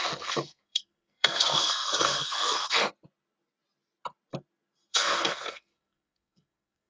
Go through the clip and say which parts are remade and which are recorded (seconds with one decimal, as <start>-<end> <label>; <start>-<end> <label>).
0.0-2.9 remade; 2.9-4.9 recorded; 4.9-6.9 remade

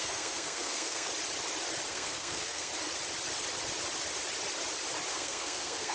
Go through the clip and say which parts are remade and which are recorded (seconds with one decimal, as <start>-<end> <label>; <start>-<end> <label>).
0.0-1.1 remade; 1.1-1.9 recorded; 1.9-2.7 remade; 2.7-5.1 recorded; 5.1-5.9 remade

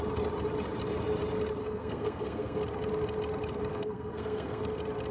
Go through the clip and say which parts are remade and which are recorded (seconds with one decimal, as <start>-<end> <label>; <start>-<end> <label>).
0.0-1.6 recorded; 1.6-2.6 remade; 2.6-3.7 recorded; 3.7-4.6 remade; 4.6-5.1 recorded

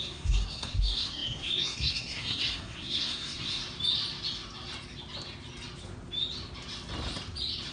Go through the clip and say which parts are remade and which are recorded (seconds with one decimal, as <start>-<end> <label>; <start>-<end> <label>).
0.0-3.6 remade; 3.6-7.7 recorded

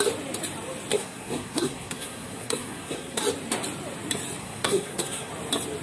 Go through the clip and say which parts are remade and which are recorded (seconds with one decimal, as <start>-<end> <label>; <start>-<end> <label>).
0.0-0.9 recorded; 0.9-3.2 remade; 3.2-4.4 recorded; 4.4-5.3 remade; 5.3-5.8 recorded

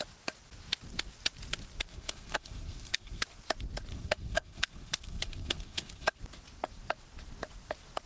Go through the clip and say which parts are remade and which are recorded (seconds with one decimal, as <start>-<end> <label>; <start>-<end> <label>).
0.0-1.9 recorded; 1.9-3.2 remade; 3.2-3.9 recorded; 3.9-6.2 remade; 6.2-8.1 recorded

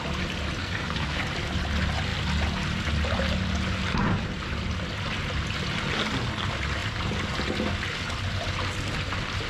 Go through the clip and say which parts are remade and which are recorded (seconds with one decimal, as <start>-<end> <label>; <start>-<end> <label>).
0.0-0.6 recorded; 0.6-1.2 remade; 1.2-9.5 recorded